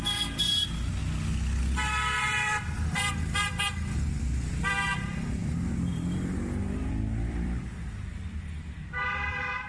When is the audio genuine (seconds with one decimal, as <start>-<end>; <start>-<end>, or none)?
1.0-1.6